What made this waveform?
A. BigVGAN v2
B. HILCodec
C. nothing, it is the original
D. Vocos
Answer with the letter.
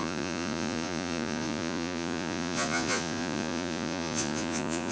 D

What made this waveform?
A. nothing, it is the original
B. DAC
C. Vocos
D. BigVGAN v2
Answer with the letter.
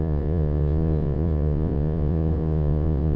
C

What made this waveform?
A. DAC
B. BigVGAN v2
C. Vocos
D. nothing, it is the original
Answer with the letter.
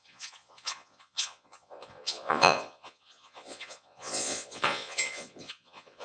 C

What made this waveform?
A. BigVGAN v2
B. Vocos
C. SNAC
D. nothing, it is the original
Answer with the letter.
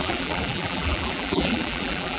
A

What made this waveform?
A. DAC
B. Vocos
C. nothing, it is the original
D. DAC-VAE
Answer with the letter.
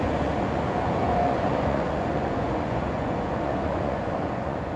B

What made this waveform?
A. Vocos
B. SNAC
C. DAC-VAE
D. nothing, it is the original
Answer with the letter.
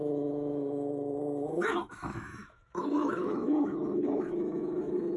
C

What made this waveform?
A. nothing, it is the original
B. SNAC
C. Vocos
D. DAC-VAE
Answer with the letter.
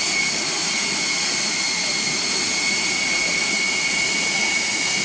C